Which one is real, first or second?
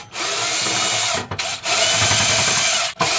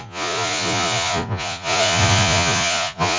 first